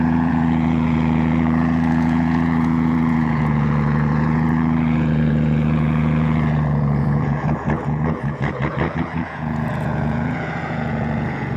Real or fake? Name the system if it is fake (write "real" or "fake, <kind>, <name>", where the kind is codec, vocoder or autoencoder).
fake, vocoder, Vocos